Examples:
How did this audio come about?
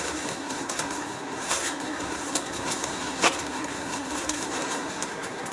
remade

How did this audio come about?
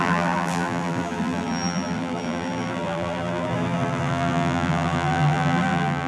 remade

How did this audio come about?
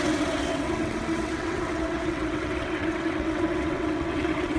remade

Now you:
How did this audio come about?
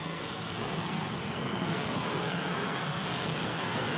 remade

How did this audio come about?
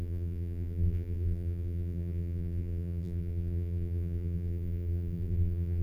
remade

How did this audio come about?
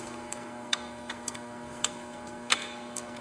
remade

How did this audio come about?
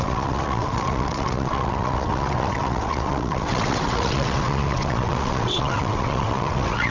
remade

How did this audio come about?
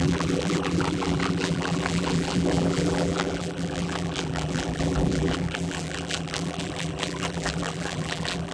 remade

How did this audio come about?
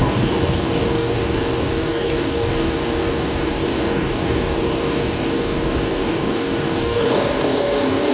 remade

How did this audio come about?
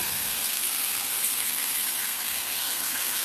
remade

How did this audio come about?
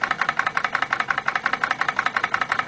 remade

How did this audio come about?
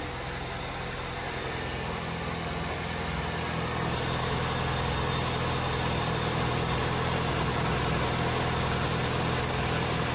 recorded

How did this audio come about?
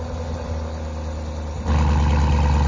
recorded